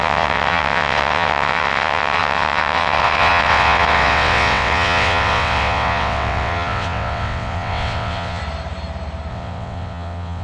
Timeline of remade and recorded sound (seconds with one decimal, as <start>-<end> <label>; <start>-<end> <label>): 0.0-8.4 remade; 8.4-9.3 recorded; 9.3-10.4 remade